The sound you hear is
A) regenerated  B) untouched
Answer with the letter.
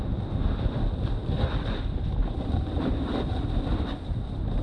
B